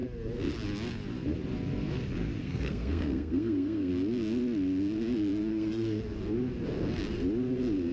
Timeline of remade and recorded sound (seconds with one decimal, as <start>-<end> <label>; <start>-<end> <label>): 0.0-2.4 recorded; 2.4-3.9 remade; 3.9-5.5 recorded; 5.5-6.0 remade; 6.0-7.9 recorded